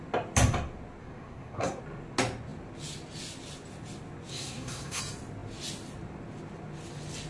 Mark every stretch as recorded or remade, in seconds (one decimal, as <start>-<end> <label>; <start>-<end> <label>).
0.0-1.0 recorded; 1.0-1.8 remade; 1.8-4.3 recorded; 4.3-5.0 remade; 5.0-7.3 recorded